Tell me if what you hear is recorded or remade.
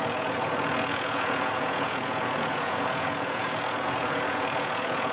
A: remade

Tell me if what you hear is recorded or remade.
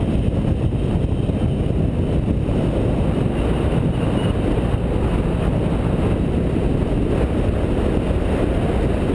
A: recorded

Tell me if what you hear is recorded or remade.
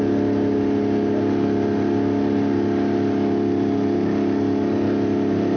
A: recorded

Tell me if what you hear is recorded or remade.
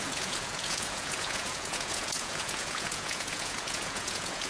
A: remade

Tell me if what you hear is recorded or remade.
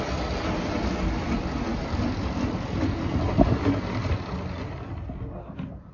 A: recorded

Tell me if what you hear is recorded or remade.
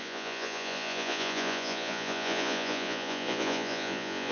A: remade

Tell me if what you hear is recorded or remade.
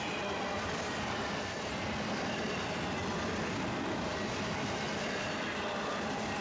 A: recorded